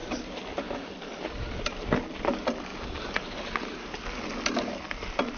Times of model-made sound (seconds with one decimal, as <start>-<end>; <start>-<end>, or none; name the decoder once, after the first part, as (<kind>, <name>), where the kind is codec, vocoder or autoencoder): none